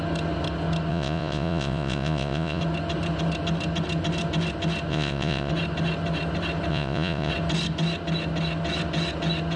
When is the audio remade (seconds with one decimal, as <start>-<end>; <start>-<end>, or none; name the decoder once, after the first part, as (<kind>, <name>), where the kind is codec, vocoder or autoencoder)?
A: 0.9-2.6 (vocoder, Vocos); 4.9-5.5; 6.7-7.3